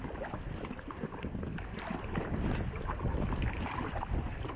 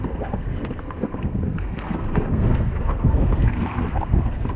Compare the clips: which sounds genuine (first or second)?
first